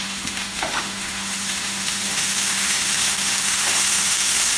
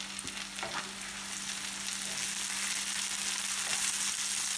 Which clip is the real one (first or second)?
second